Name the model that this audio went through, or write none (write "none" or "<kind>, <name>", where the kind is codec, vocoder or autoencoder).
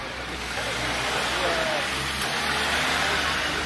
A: none